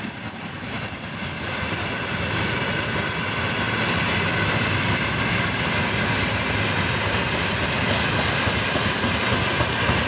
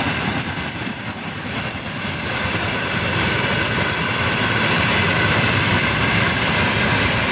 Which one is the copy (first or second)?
second